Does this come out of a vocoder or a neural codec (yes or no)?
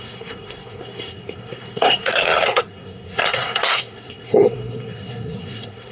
yes